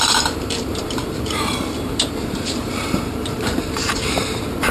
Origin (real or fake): fake